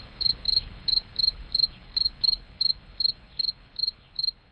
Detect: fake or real fake